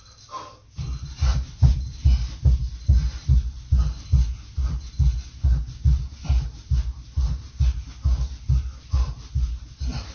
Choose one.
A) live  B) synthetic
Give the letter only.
A